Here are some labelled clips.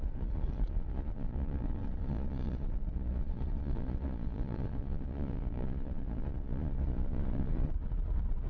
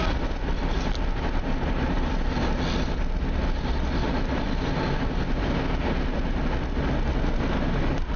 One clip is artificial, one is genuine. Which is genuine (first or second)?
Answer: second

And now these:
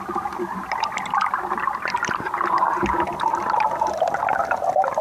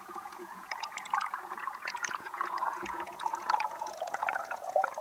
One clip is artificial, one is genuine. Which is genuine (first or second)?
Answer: first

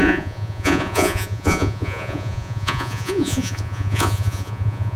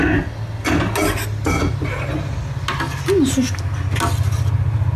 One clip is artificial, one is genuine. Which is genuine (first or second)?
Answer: second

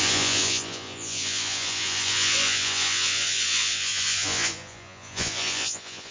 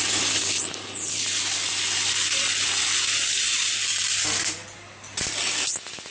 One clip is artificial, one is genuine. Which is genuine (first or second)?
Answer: second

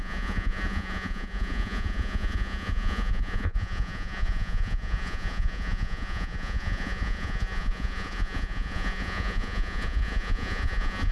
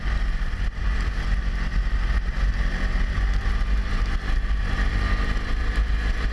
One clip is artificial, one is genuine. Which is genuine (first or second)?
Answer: second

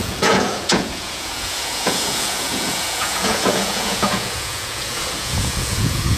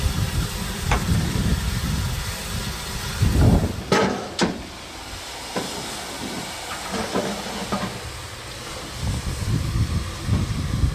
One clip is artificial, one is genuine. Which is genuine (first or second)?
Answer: second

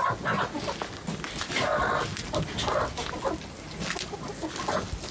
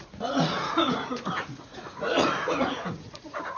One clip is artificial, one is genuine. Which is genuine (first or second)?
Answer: first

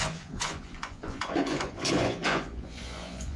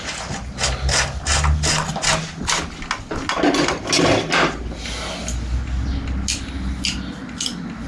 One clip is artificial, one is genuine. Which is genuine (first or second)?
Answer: second